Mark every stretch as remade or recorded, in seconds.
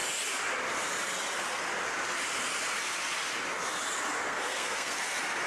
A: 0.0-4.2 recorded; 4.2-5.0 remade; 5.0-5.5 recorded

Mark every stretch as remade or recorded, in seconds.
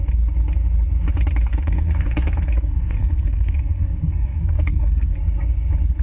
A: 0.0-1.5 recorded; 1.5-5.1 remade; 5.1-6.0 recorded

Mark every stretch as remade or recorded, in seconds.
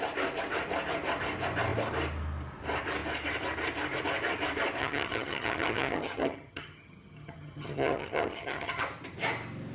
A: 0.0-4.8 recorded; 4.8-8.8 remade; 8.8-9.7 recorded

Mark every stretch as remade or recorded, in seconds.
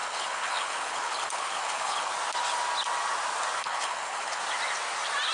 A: 0.0-2.1 remade; 2.1-3.6 recorded; 3.6-4.4 remade; 4.4-5.3 recorded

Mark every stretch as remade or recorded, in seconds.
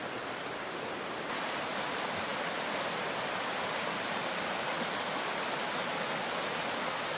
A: 0.0-2.3 recorded; 2.3-3.3 remade; 3.3-7.2 recorded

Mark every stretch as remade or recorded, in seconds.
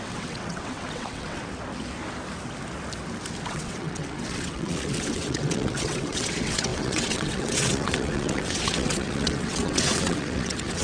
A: 0.0-1.4 remade; 1.4-3.5 recorded; 3.5-10.8 remade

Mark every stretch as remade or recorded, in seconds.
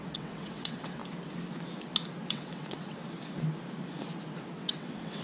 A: 0.0-1.0 remade; 1.0-2.3 recorded; 2.3-3.0 remade; 3.0-4.3 recorded; 4.3-5.2 remade